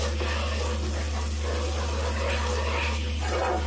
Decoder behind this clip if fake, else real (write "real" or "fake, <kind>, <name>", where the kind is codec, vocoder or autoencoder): real